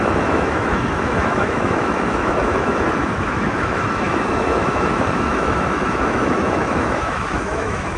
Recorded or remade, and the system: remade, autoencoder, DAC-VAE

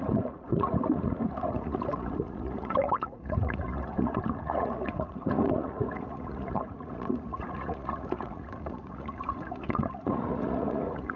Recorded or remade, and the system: remade, vocoder, Vocos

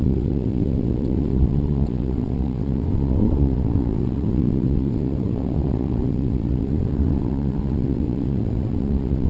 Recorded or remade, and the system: remade, vocoder, WaveNeXt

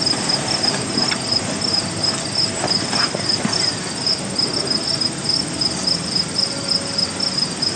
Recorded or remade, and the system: recorded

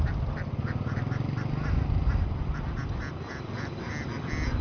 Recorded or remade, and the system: recorded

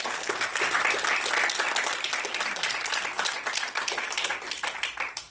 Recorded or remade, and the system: recorded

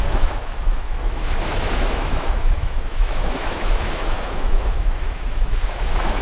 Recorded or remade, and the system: remade, autoencoder, DAC-VAE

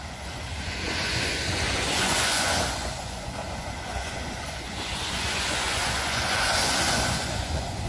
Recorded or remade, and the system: remade, vocoder, Vocos